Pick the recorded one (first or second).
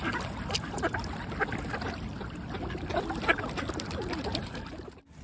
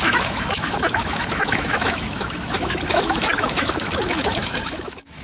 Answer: first